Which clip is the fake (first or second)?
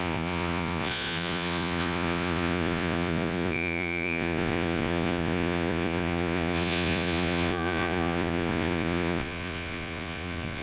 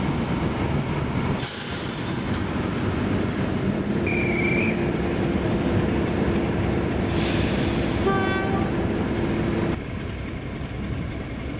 first